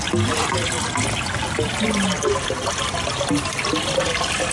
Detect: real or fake real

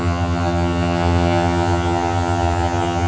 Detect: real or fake fake